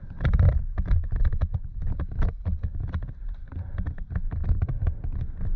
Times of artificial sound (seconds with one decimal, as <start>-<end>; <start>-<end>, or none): none